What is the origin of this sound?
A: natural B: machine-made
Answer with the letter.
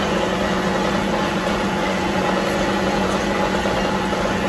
B